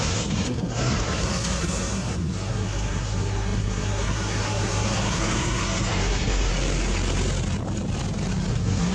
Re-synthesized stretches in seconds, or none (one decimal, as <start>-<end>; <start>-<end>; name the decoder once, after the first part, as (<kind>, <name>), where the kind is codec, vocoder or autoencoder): 0.0-6.5 (codec, SNAC); 8.5-8.9

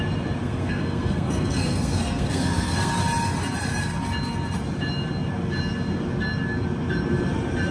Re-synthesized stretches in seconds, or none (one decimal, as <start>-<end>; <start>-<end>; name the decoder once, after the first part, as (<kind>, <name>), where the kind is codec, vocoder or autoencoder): 0.4-2.9 (codec, SNAC)

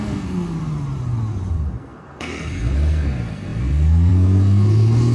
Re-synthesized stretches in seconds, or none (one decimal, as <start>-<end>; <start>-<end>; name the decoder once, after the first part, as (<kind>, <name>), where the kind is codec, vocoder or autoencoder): 0.0-0.6 (codec, SNAC); 1.5-5.1

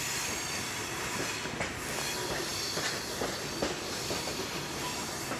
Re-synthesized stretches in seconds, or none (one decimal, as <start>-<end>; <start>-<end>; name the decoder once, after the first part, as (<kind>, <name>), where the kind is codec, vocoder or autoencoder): none

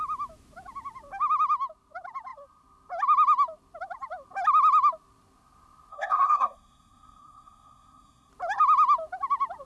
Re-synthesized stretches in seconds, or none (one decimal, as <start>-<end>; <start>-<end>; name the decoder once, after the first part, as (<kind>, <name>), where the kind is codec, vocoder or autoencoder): 5.9-8.3 (codec, SNAC)

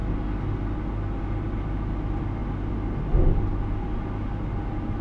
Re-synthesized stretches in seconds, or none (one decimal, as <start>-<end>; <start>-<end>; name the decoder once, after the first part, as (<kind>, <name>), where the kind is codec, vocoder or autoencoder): none